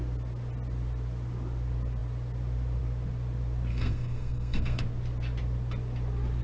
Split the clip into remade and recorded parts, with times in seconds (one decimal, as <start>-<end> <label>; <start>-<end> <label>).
0.0-3.7 recorded; 3.7-4.8 remade; 4.8-6.4 recorded